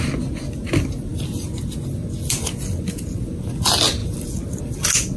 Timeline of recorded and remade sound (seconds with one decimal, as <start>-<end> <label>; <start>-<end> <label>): 0.0-5.2 recorded